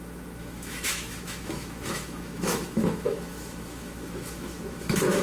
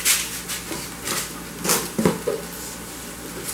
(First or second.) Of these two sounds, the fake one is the first